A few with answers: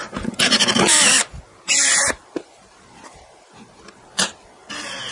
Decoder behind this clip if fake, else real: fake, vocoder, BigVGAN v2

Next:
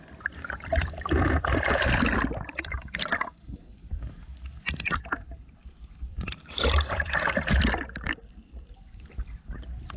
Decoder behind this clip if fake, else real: fake, vocoder, BigVGAN v2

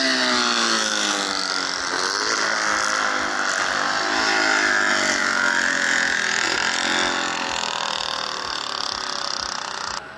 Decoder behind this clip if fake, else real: real